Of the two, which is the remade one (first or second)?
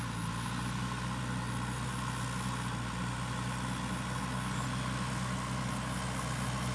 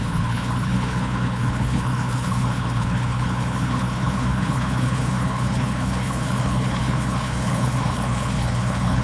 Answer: second